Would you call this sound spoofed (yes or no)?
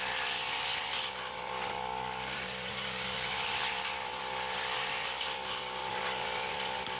yes